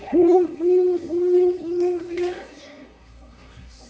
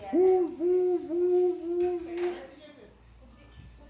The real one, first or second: second